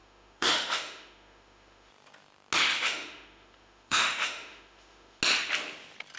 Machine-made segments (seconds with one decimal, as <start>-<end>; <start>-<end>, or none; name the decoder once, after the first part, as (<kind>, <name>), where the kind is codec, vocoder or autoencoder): 0.0-1.9 (autoencoder, DAC-VAE); 2.7-5.2